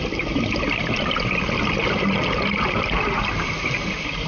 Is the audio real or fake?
real